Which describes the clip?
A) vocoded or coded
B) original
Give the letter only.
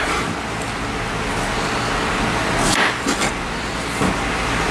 B